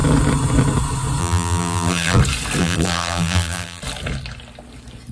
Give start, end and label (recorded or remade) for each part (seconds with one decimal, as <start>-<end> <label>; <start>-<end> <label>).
0.0-1.2 recorded; 1.2-2.2 remade; 2.2-2.6 recorded; 2.6-3.8 remade; 3.8-5.1 recorded